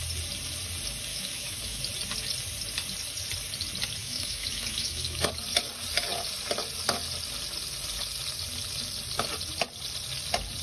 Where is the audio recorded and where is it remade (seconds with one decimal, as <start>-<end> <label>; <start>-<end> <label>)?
0.0-1.1 recorded; 1.1-1.8 remade; 1.8-4.0 recorded; 4.0-5.3 remade; 5.3-10.6 recorded